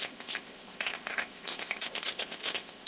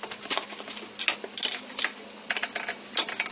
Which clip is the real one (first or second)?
second